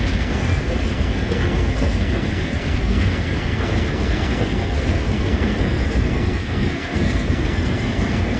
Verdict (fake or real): fake